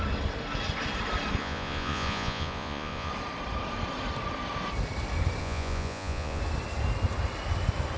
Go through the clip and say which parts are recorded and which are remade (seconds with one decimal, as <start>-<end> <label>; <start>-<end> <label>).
0.0-1.4 recorded; 1.4-3.1 remade; 3.1-5.4 recorded; 5.4-6.4 remade; 6.4-8.0 recorded